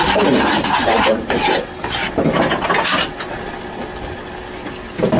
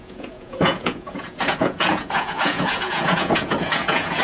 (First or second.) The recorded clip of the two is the first